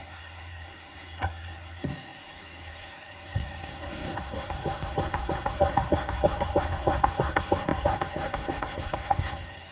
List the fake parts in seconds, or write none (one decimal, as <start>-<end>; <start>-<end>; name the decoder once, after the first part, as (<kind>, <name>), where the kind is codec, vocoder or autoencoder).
0.0-9.7 (codec, SNAC)